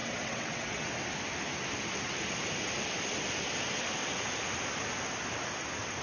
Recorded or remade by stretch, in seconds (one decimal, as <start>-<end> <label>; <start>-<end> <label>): 0.0-0.9 remade; 0.9-6.0 recorded